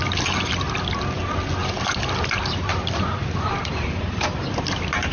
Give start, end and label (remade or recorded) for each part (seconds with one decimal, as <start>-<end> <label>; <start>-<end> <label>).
0.0-1.6 recorded; 1.6-3.8 remade; 3.8-5.1 recorded